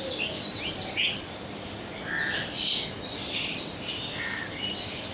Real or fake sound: real